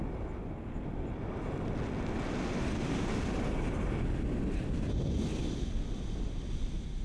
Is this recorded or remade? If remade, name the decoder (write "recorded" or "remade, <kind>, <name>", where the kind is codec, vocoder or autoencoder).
recorded